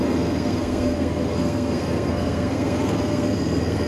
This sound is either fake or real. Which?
fake